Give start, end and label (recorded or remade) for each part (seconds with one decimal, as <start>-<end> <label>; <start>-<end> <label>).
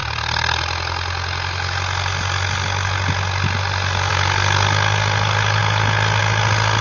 0.0-6.8 recorded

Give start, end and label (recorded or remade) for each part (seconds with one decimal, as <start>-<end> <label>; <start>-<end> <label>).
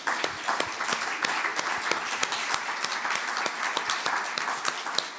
0.0-5.2 recorded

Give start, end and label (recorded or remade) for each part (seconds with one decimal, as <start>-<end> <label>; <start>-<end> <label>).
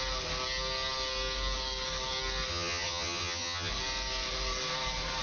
0.0-2.5 recorded; 2.5-3.7 remade; 3.7-5.2 recorded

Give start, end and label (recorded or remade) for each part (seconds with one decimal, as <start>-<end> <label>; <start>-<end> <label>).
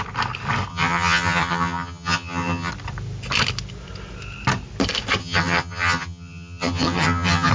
0.0-0.7 recorded; 0.7-2.7 remade; 2.7-5.2 recorded; 5.2-7.5 remade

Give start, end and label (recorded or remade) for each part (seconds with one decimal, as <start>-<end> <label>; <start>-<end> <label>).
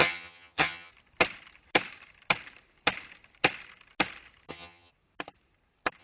0.0-0.9 remade; 0.9-4.5 recorded; 4.5-4.9 remade; 4.9-6.0 recorded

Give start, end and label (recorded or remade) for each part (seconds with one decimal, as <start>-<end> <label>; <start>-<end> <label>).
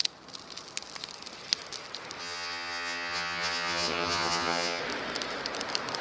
0.0-2.2 recorded; 2.2-4.8 remade; 4.8-6.0 recorded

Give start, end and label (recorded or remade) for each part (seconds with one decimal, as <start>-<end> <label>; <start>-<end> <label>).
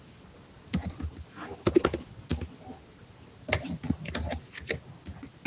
0.0-5.5 recorded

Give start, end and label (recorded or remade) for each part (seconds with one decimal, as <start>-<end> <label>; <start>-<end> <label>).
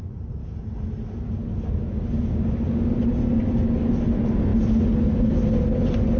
0.0-6.2 recorded